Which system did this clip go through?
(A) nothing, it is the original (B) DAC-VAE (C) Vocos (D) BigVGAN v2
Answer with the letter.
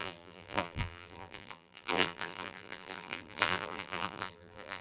D